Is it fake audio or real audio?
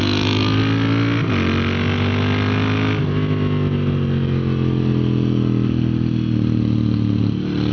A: real